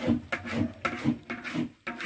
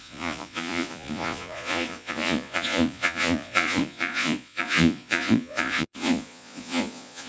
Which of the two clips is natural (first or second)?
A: first